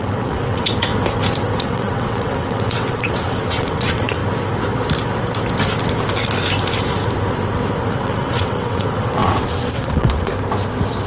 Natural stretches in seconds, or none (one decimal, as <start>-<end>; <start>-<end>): 0.9-1.6; 4.2-7.9; 10.3-11.1